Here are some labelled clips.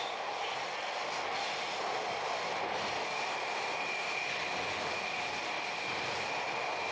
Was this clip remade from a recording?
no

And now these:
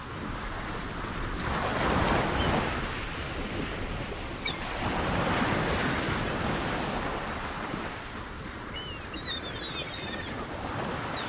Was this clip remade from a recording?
no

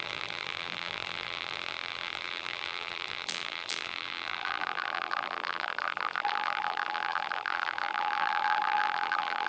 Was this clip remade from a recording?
yes